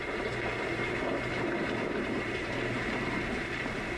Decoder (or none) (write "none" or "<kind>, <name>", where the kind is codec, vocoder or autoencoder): vocoder, BigVGAN v2